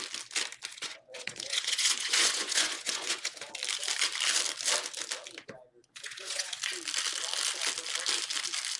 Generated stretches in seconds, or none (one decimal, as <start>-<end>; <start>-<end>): 0.7-3.5; 5.8-6.6